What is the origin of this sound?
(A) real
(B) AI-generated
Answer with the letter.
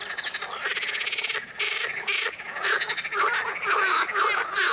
A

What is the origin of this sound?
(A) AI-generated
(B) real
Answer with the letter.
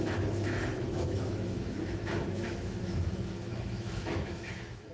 A